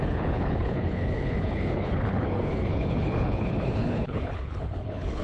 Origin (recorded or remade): remade